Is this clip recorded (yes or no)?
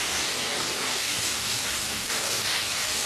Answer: no